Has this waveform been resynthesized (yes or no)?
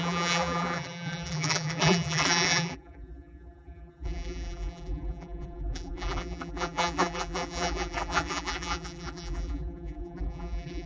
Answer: yes